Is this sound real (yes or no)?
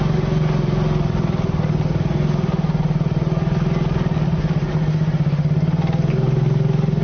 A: yes